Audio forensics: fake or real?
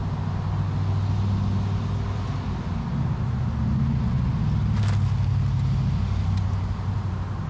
real